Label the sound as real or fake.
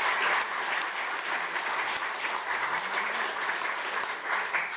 real